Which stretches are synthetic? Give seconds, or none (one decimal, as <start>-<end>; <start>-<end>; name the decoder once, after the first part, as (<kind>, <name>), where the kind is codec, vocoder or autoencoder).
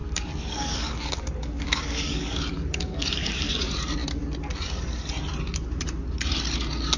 0.0-3.5 (codec, DAC)